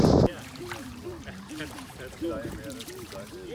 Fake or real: fake